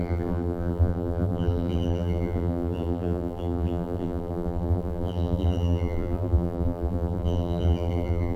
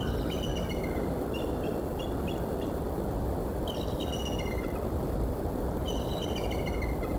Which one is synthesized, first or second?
first